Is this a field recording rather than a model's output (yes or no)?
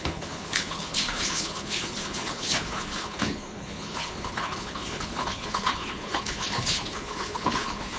no